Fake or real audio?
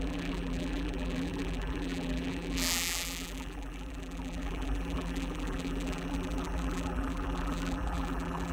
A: fake